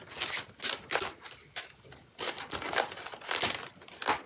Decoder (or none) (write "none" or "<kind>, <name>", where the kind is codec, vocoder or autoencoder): none